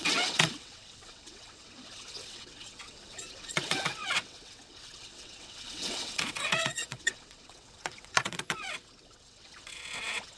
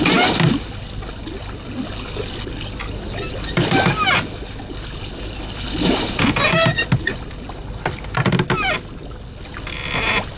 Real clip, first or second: second